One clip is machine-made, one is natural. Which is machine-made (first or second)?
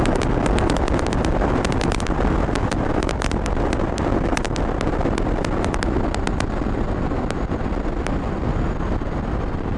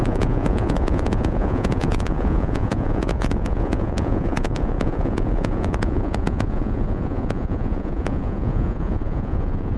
second